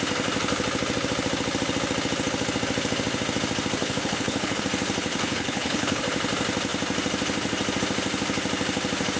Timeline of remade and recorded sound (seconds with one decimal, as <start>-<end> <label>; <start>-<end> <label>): 0.0-3.8 recorded; 3.8-4.6 remade; 4.6-5.1 recorded; 5.1-6.0 remade; 6.0-9.2 recorded